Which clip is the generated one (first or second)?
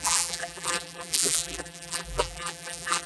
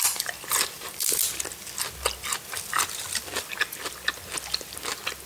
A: first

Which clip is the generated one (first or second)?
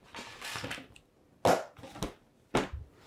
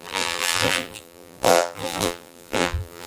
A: second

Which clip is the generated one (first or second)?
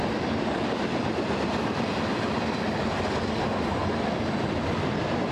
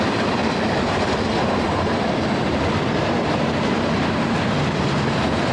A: second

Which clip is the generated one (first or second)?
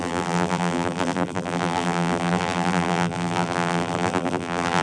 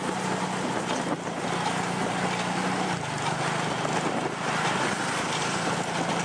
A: first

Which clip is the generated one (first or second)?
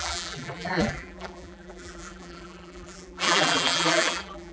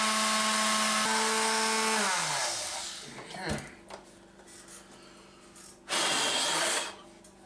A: first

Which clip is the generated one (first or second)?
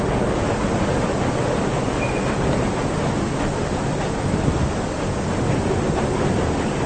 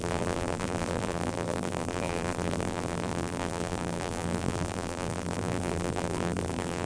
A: second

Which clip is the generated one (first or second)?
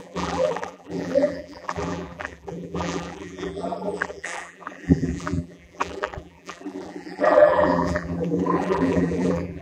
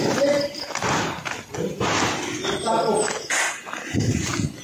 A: first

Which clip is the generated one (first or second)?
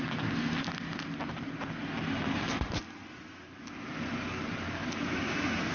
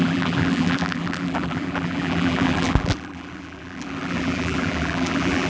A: second